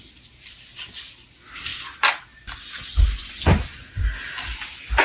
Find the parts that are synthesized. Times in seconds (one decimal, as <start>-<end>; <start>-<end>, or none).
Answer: none